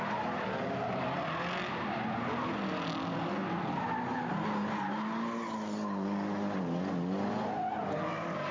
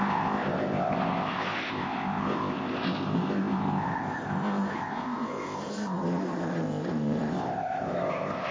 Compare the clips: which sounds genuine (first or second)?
first